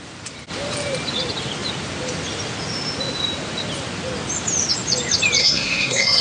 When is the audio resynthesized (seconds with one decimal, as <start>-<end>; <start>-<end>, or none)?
5.4-6.2